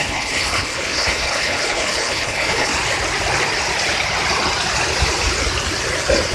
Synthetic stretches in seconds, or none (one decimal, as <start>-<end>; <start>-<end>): 0.0-2.7